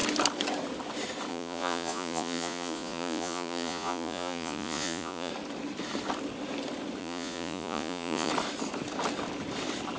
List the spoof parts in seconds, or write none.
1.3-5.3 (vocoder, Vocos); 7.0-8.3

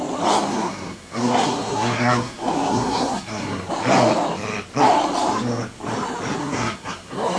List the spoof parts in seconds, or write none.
0.5-3.7 (codec, SNAC); 6.4-7.4